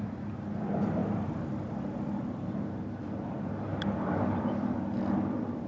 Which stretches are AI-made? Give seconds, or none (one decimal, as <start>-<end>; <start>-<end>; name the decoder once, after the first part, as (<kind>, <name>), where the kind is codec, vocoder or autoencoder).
0.0-5.7 (vocoder, BigVGAN v2)